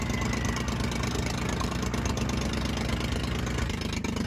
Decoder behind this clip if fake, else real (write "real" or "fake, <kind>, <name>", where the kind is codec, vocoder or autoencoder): real